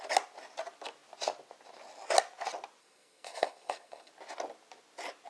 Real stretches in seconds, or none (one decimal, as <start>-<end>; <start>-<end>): 0.0-2.8; 4.1-5.3